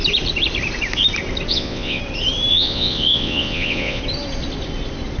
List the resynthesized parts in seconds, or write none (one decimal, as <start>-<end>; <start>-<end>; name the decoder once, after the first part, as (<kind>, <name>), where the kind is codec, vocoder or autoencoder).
1.5-2.0 (vocoder, Vocos); 2.5-4.0